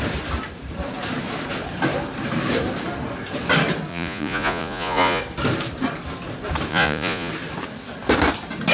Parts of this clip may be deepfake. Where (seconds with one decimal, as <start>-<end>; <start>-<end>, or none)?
3.9-5.2; 6.7-7.3